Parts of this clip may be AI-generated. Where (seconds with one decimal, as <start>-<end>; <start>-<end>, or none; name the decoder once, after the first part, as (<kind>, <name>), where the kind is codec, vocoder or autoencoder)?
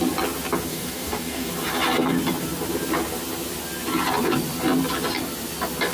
0.7-1.5 (codec, DAC)